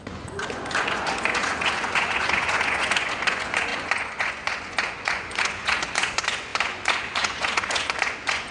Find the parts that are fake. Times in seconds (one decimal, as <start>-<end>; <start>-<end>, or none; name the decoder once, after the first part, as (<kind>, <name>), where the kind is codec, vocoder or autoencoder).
0.0-8.5 (vocoder, Vocos)